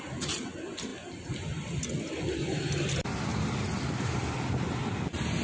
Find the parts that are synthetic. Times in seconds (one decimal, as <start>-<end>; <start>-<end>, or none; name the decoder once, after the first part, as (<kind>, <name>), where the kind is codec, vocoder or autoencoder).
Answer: none